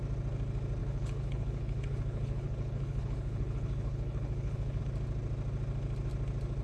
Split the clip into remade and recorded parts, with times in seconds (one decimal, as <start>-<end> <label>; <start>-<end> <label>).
0.0-0.8 recorded; 0.8-4.8 remade; 4.8-6.6 recorded